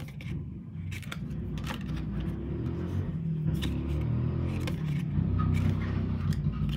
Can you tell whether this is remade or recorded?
recorded